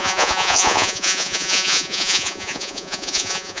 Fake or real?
fake